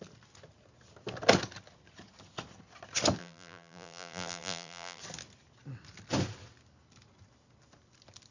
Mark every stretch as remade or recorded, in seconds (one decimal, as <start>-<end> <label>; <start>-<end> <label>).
0.0-3.2 recorded; 3.2-5.0 remade; 5.0-8.3 recorded